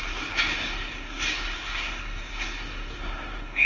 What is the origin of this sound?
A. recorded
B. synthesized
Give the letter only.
B